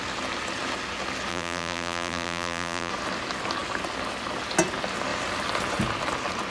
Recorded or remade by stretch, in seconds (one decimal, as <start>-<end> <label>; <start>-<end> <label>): 0.0-1.3 recorded; 1.3-2.9 remade; 2.9-6.5 recorded